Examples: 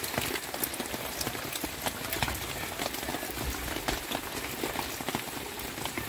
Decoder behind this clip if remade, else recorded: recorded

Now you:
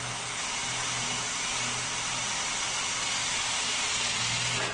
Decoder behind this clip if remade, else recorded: recorded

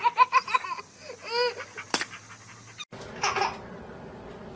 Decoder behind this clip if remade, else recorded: recorded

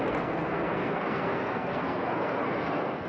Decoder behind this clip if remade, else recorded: remade, codec, SNAC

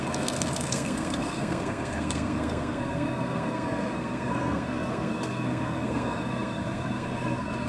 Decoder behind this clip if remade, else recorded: remade, codec, SNAC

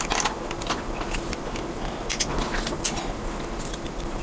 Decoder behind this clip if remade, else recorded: recorded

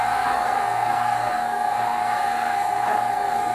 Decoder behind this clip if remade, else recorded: remade, codec, SNAC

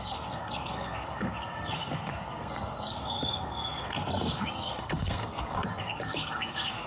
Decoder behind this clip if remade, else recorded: remade, codec, SNAC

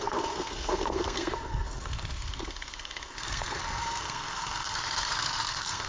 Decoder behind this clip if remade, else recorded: remade, codec, SNAC